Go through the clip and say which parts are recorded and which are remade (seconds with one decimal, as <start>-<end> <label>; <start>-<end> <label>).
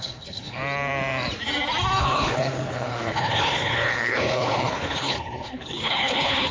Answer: 0.0-0.6 remade; 0.6-2.0 recorded; 2.0-6.5 remade